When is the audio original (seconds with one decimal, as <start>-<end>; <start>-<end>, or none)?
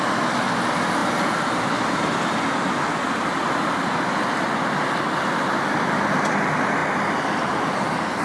0.0-8.2